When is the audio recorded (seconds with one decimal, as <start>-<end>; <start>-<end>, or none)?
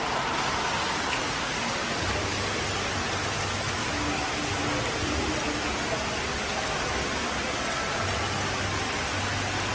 0.0-9.7